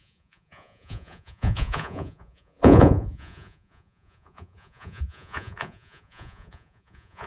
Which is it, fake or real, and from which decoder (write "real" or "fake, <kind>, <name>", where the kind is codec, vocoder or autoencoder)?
fake, vocoder, Vocos